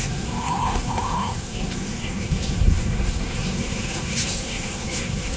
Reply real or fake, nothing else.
fake